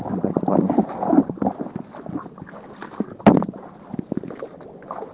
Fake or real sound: real